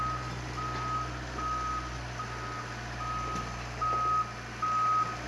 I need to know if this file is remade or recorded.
recorded